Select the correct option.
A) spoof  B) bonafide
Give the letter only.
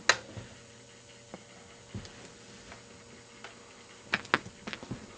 B